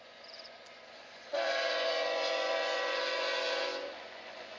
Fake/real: fake